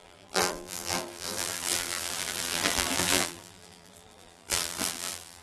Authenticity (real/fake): fake